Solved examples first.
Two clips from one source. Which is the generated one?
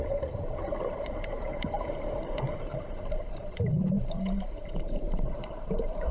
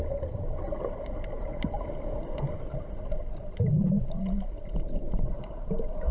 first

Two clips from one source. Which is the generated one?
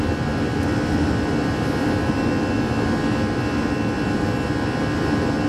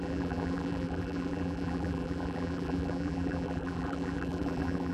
second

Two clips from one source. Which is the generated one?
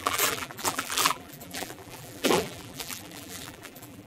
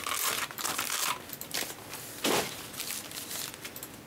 first